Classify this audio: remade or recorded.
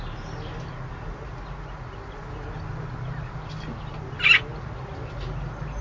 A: recorded